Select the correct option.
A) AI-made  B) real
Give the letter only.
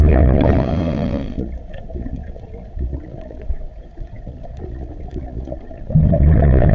A